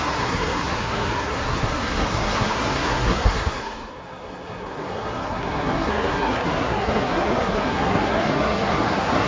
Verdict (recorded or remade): remade